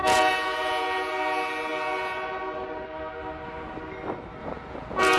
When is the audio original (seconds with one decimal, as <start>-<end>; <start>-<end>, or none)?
1.1-4.4